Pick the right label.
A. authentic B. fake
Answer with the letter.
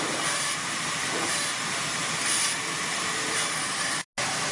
A